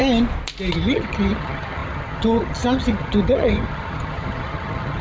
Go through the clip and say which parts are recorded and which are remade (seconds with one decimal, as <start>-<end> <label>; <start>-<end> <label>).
0.0-0.7 recorded; 0.7-5.0 remade